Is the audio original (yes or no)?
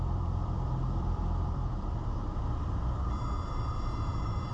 no